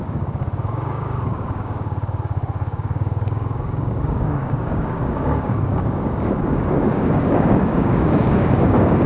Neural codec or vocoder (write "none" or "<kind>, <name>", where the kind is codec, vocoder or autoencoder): codec, DAC